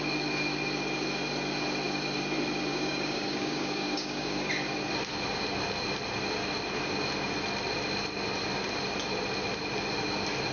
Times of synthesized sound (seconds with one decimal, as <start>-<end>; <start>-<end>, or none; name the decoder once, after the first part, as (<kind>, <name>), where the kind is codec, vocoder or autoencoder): 2.7-4.5 (codec, DAC)